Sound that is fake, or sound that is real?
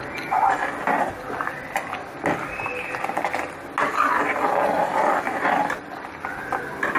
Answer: real